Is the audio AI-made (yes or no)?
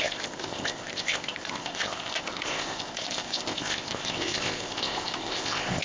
yes